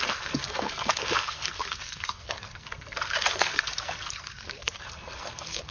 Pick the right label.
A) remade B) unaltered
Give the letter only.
A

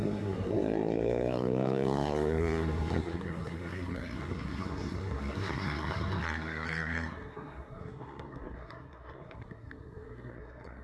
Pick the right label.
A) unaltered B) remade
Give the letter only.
B